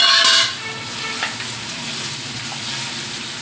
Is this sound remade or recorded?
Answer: recorded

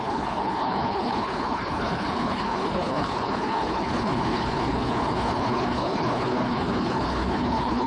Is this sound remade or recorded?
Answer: remade